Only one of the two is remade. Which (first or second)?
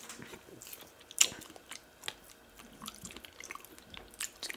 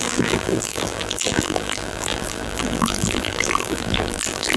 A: second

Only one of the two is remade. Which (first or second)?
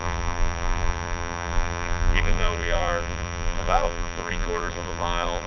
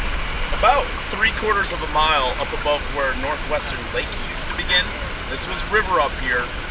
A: first